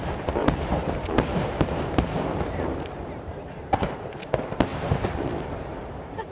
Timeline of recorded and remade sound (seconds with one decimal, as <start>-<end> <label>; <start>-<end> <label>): 0.0-0.4 recorded; 0.4-3.9 remade; 3.9-4.7 recorded; 4.7-6.3 remade